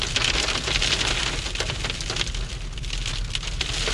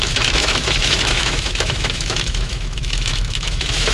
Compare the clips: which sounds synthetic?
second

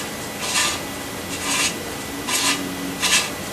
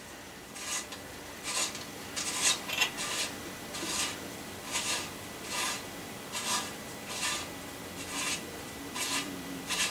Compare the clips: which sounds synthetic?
second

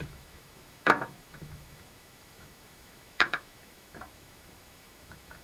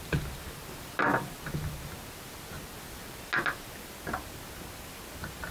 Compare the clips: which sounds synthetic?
first